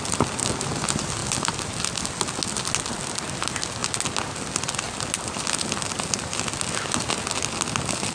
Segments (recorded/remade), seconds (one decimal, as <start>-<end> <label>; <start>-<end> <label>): 0.0-8.1 recorded